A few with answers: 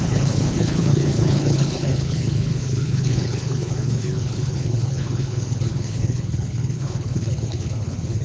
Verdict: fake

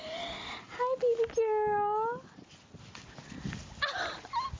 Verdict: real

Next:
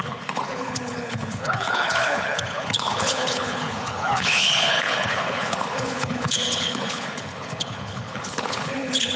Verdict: fake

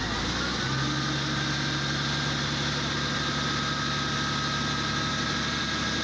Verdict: real